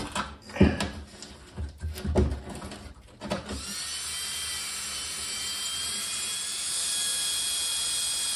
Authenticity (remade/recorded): recorded